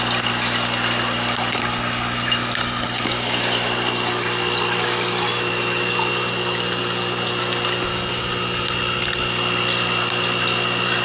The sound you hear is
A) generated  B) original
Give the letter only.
B